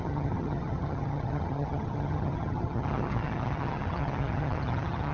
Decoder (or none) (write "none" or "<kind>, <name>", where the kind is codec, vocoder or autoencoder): vocoder, HiFi-GAN